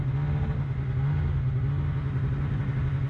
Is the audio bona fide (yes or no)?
yes